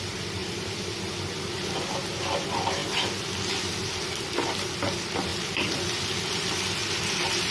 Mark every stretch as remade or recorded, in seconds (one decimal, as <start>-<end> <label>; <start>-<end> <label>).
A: 0.0-6.8 recorded; 6.8-7.5 remade